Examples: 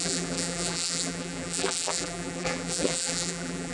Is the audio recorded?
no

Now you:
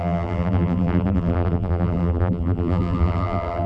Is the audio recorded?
no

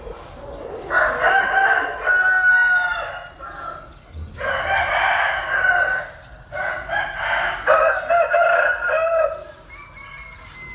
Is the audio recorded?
yes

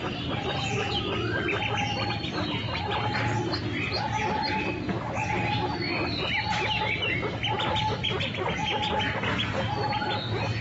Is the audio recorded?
yes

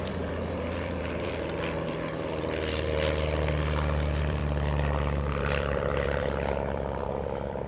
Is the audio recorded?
no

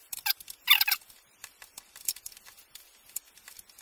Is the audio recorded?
no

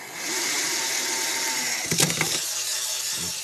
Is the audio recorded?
no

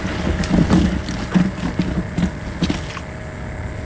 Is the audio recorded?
yes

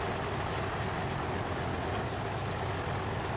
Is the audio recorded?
yes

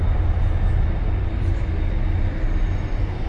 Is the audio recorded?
yes